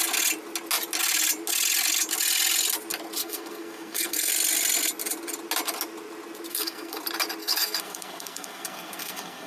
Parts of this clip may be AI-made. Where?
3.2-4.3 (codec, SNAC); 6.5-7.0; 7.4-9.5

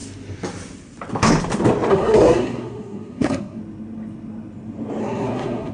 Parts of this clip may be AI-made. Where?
1.9-3.6 (codec, SNAC); 5.0-5.7

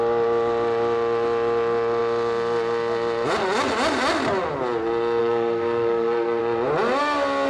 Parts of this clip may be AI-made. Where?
5.2-6.4 (codec, SNAC)

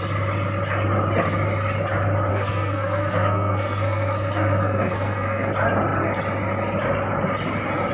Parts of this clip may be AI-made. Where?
2.3-5.5 (codec, SNAC)

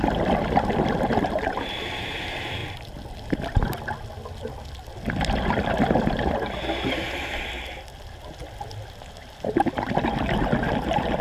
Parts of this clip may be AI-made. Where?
none

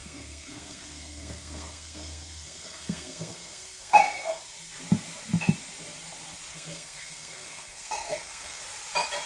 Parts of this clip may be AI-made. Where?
0.0-4.4 (codec, SNAC); 6.5-8.6

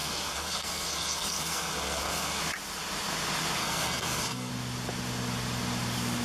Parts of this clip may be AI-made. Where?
0.0-2.4 (codec, SNAC); 3.6-4.5